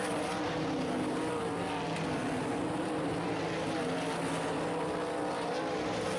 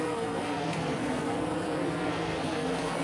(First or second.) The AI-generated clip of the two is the second